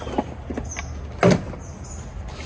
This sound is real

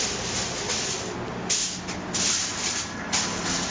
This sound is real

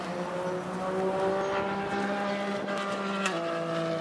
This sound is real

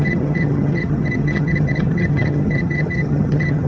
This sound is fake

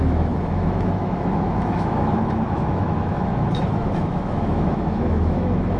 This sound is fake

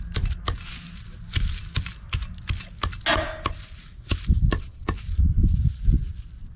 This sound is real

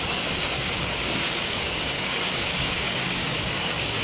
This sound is fake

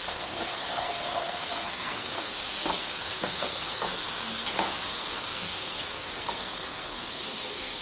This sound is fake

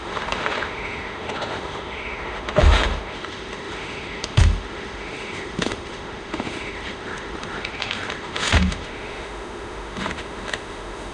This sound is fake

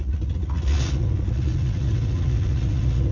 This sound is fake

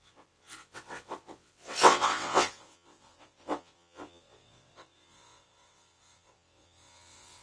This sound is fake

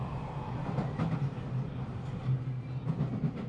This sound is real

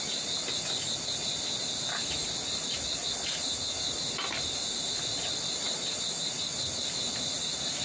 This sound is real